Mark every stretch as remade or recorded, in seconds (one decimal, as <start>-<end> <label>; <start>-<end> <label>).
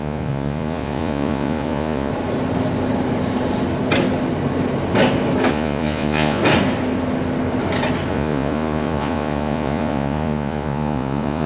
0.0-2.1 remade; 2.1-5.5 recorded; 5.5-6.4 remade; 6.4-8.1 recorded; 8.1-11.5 remade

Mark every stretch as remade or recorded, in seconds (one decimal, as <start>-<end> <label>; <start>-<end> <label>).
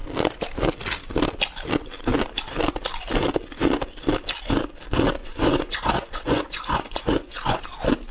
0.0-5.2 recorded; 5.2-7.6 remade; 7.6-8.1 recorded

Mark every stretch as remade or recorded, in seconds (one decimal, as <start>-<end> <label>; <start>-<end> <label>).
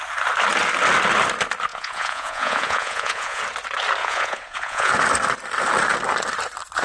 0.0-1.7 recorded; 1.7-3.4 remade; 3.4-4.0 recorded; 4.0-4.9 remade; 4.9-6.8 recorded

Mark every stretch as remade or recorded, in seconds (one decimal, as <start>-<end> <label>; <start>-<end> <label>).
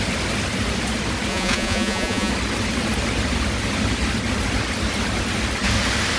0.0-1.3 recorded; 1.3-2.3 remade; 2.3-6.2 recorded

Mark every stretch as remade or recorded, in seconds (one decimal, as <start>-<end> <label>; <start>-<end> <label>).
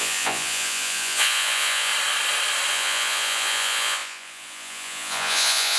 0.0-1.9 remade; 1.9-2.7 recorded; 2.7-5.8 remade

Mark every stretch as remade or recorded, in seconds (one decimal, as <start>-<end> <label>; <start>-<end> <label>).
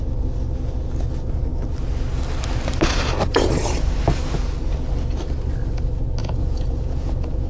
0.0-6.2 recorded; 6.2-7.5 remade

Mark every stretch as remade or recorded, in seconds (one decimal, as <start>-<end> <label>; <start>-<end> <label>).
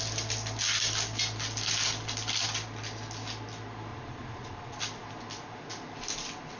0.0-3.9 recorded; 3.9-4.8 remade; 4.8-6.6 recorded